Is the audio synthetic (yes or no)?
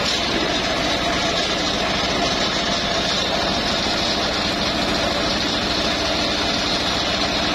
no